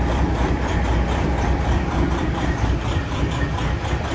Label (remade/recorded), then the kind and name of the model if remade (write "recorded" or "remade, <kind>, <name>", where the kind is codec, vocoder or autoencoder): remade, vocoder, BigVGAN v2